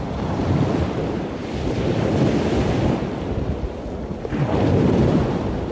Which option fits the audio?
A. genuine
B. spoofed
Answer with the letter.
A